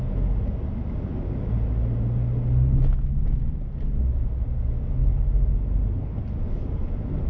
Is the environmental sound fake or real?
real